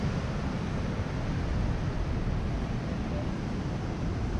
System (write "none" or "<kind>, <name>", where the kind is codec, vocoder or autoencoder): none